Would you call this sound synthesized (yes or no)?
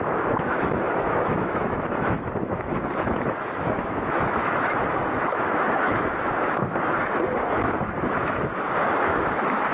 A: yes